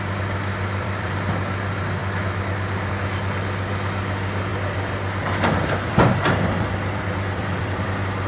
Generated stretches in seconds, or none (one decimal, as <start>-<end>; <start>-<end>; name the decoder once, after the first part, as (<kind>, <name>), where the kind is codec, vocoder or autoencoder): 0.5-1.1 (vocoder, BigVGAN v2); 4.5-8.3